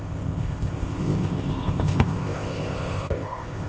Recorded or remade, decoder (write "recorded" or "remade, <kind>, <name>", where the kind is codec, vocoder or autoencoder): remade, codec, ZipCodec